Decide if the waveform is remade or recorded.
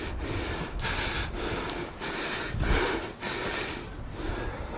recorded